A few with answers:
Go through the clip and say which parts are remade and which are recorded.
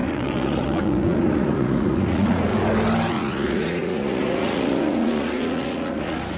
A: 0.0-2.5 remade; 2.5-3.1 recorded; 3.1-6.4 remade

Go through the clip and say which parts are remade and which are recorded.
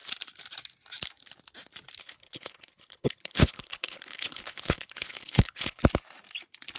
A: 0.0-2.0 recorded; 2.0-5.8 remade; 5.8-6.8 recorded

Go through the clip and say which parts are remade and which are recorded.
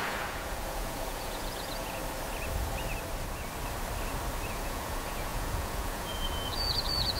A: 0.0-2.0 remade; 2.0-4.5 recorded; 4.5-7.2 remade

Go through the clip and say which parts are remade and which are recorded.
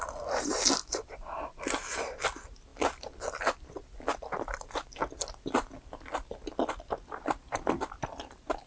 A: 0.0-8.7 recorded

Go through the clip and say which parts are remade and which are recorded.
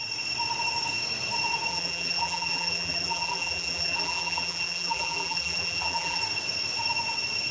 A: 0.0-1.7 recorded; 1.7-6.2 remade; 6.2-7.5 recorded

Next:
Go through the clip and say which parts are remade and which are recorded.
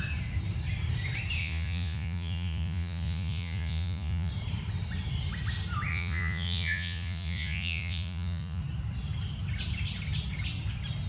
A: 0.0-1.4 recorded; 1.4-4.3 remade; 4.3-5.9 recorded; 5.9-8.6 remade; 8.6-11.1 recorded